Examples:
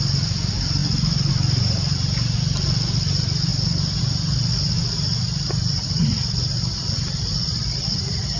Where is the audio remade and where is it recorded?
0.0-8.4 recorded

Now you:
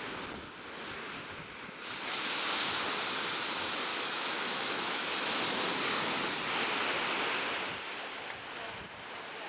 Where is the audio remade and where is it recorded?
0.0-3.9 recorded; 3.9-5.4 remade; 5.4-9.5 recorded

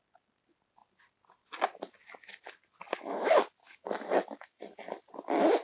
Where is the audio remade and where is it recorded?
0.0-3.6 recorded; 3.6-4.6 remade; 4.6-5.6 recorded

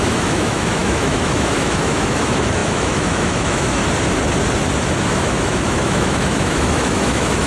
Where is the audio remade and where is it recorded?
0.0-3.8 remade; 3.8-5.0 recorded; 5.0-7.5 remade

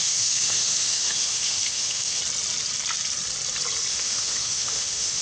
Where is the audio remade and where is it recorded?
0.0-2.2 remade; 2.2-3.9 recorded; 3.9-5.2 remade

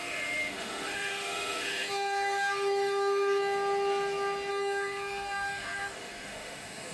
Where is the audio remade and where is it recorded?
0.0-3.4 remade; 3.4-4.5 recorded; 4.5-6.9 remade

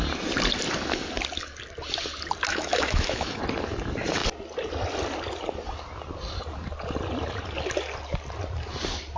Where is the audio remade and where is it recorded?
0.0-2.5 recorded; 2.5-3.4 remade; 3.4-9.2 recorded